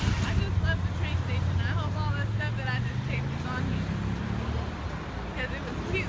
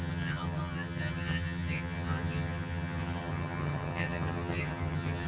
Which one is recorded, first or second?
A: first